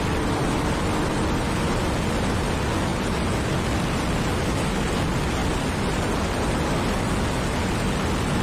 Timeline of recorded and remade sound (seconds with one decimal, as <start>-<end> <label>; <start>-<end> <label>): 0.0-8.4 recorded